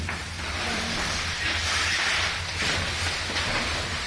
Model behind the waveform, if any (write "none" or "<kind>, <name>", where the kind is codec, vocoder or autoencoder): vocoder, BigVGAN v2